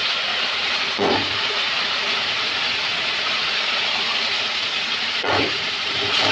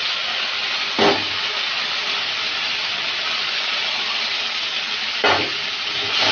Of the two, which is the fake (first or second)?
first